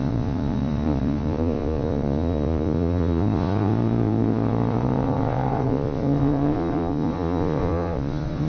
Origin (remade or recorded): remade